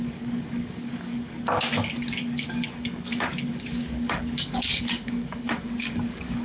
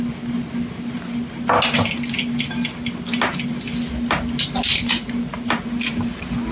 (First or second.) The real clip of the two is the second